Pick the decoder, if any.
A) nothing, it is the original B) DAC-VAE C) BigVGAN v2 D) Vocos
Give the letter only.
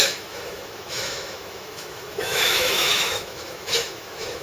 B